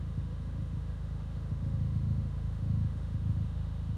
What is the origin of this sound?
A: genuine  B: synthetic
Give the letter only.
B